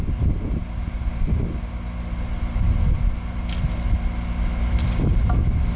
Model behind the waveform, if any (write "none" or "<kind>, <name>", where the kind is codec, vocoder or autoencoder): none